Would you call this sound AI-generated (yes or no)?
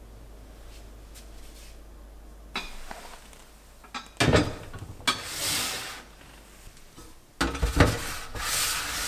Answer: no